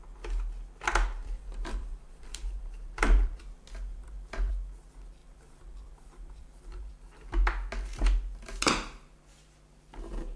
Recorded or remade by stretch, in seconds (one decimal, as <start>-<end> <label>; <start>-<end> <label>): 0.0-1.2 recorded; 1.2-3.4 remade; 3.4-3.9 recorded; 3.9-4.5 remade; 4.5-5.2 recorded; 5.2-6.9 remade; 6.9-10.4 recorded